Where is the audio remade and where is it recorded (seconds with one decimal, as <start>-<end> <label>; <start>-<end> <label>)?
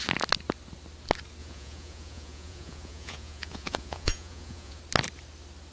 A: 0.0-1.4 recorded; 1.4-4.8 remade; 4.8-5.7 recorded